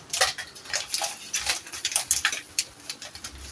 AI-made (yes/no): no